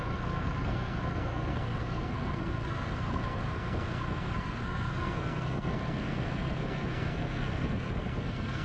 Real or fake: fake